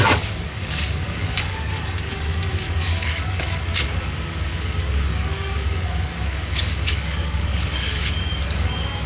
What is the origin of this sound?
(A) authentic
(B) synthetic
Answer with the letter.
B